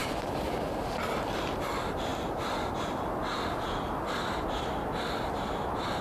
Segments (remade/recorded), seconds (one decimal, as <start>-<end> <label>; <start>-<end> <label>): 0.0-6.0 recorded